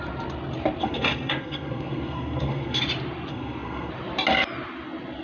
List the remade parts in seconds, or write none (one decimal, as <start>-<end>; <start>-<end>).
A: 0.8-2.8; 3.3-3.9